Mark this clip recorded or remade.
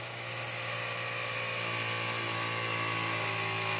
recorded